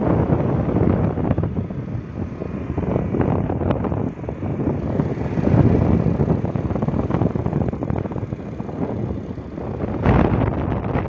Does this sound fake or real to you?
real